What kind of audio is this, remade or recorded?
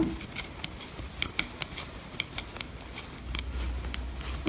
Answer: recorded